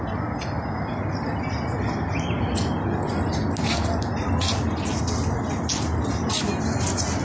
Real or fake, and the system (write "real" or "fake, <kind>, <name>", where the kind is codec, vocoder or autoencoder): real